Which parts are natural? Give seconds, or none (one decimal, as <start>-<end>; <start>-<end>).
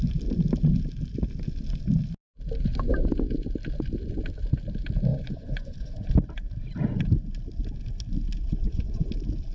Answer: 0.0-5.1; 6.1-8.5; 9.1-9.5